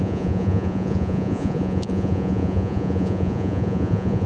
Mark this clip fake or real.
fake